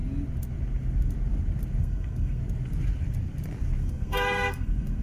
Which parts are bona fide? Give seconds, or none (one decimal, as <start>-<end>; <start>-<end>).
0.0-1.8; 2.4-3.8